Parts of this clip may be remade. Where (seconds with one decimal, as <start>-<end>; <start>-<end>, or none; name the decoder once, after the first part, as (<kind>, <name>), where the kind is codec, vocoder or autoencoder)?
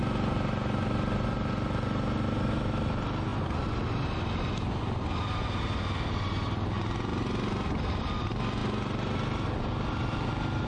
none